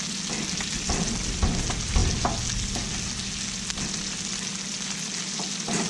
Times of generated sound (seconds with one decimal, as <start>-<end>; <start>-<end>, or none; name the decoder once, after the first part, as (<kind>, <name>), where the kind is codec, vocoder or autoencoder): none